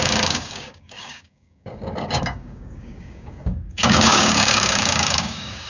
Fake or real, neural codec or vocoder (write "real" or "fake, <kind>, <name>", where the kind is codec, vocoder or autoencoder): fake, codec, DAC